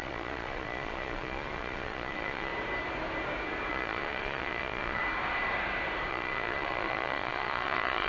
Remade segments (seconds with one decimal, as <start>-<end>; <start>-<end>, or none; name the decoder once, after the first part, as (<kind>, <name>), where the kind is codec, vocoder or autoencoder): 0.0-2.5 (vocoder, Vocos); 3.7-5.0; 6.1-8.1